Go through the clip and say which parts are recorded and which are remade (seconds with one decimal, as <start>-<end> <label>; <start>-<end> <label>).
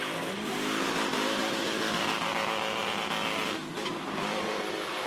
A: 0.0-1.1 recorded; 1.1-2.8 remade; 2.8-3.9 recorded; 3.9-4.6 remade; 4.6-5.1 recorded